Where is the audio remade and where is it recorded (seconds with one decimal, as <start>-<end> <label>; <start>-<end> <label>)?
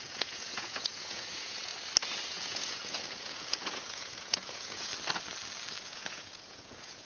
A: 0.0-1.7 remade; 1.7-2.3 recorded; 2.3-4.9 remade; 4.9-5.8 recorded; 5.8-7.0 remade